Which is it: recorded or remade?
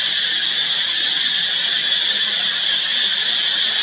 recorded